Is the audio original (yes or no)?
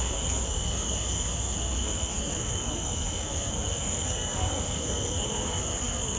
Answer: no